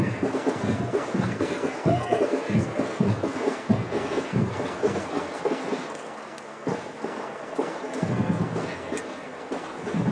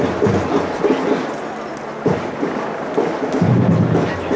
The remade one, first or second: first